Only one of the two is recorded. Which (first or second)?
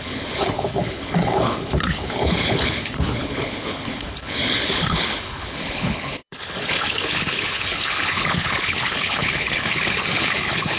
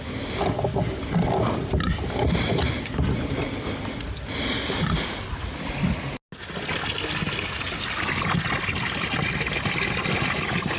second